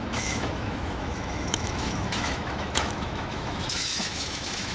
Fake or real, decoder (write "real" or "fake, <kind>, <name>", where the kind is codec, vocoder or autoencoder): fake, autoencoder, DAC-VAE